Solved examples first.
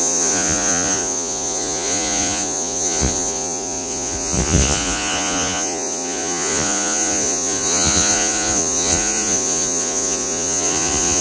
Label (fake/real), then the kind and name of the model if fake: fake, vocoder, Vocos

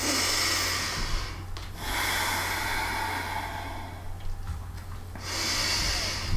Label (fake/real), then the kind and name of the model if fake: real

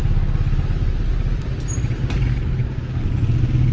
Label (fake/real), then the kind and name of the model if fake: real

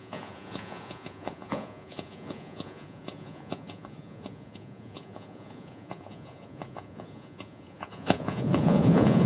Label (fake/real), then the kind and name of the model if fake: fake, vocoder, Vocos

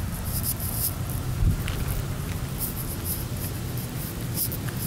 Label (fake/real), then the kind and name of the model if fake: real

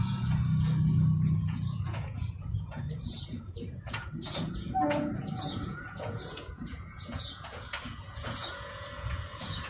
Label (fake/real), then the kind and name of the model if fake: fake, vocoder, Vocos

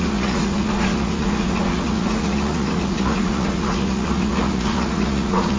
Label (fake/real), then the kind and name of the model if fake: fake, vocoder, Vocos